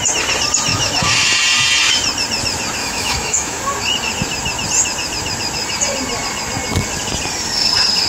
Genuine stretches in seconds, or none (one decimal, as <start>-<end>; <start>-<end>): 0.0-0.7; 1.3-2.8; 3.6-8.1